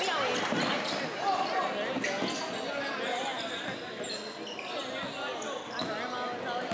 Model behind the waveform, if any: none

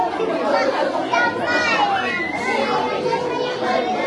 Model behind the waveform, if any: none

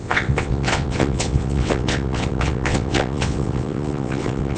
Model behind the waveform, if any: vocoder, WaveNeXt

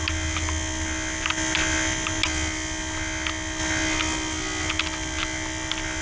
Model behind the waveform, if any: none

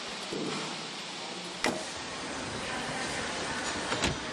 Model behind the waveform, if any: none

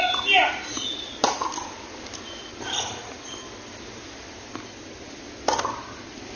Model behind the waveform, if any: none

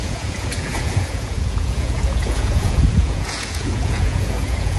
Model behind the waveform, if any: vocoder, Vocos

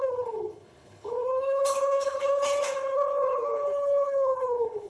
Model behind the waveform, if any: codec, HILCodec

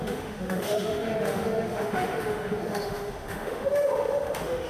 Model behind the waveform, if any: autoencoder, DAC-VAE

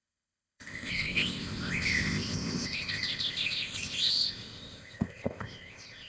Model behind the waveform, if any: codec, ZipCodec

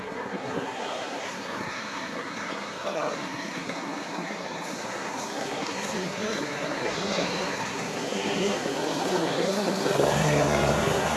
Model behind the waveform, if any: codec, SNAC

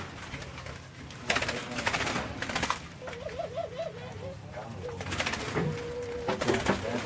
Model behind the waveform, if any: none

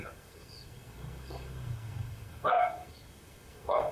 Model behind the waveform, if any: codec, SNAC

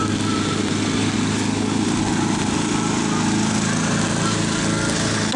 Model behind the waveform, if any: none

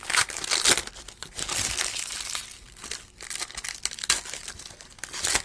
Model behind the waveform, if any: none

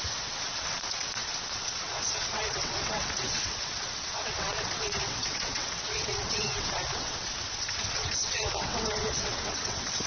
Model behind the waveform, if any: vocoder, WaveNeXt